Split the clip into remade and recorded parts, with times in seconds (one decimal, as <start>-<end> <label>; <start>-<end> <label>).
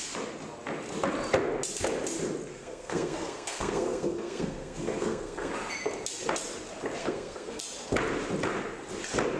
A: 0.0-2.5 recorded; 2.5-5.5 remade; 5.5-7.0 recorded; 7.0-7.6 remade; 7.6-9.4 recorded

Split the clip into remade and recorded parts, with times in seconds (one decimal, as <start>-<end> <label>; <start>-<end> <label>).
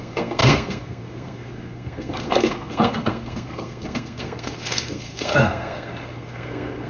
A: 0.0-6.9 remade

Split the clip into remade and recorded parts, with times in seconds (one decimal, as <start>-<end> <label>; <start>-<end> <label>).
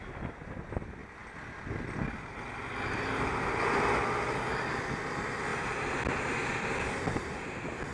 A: 0.0-7.9 recorded